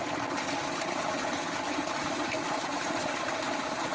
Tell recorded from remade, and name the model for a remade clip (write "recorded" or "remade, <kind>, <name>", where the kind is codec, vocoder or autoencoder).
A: recorded